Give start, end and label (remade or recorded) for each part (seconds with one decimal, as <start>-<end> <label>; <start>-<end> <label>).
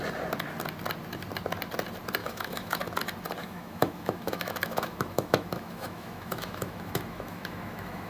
0.0-2.2 recorded; 2.2-2.8 remade; 2.8-3.4 recorded; 3.4-8.1 remade